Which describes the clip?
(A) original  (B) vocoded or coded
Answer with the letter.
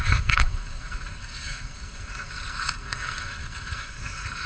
B